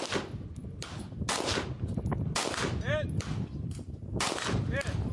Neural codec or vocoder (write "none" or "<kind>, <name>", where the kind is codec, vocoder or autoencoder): none